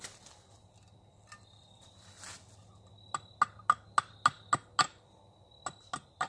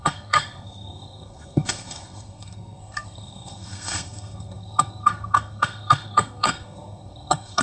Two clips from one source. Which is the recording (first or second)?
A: first